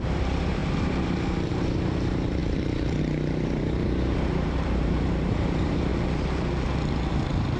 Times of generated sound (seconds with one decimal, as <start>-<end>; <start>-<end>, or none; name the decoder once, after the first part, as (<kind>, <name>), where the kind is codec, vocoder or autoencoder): 0.0-5.9 (vocoder, BigVGAN v2); 7.1-7.6